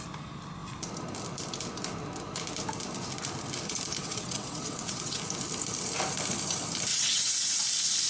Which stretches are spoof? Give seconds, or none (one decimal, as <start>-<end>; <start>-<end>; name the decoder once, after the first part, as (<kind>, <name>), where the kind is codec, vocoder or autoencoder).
4.0-5.2 (vocoder, WaveNeXt); 6.9-7.6